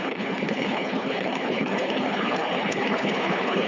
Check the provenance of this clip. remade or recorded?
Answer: remade